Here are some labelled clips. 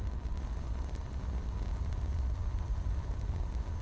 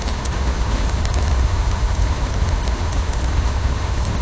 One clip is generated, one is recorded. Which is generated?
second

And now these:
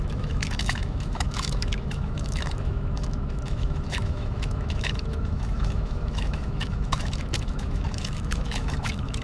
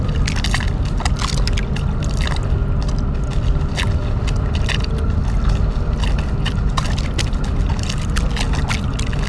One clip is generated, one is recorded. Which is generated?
first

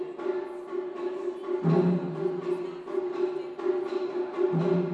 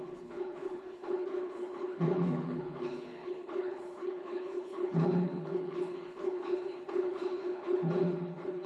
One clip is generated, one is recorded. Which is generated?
second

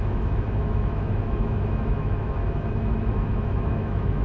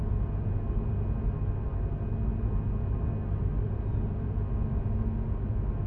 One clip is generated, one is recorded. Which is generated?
first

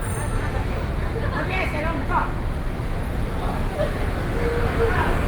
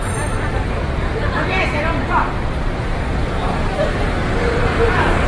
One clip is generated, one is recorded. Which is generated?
second